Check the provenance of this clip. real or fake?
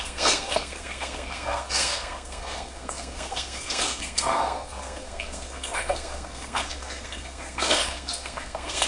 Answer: fake